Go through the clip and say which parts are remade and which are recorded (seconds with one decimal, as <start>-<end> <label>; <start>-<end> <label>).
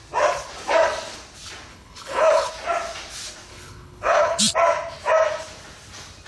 0.0-1.7 recorded; 1.7-2.5 remade; 2.5-3.5 recorded; 3.5-4.4 remade; 4.4-6.3 recorded